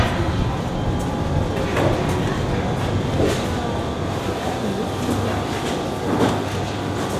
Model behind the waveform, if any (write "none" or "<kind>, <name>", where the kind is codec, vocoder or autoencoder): none